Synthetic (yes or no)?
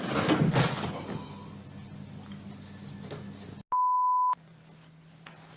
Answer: no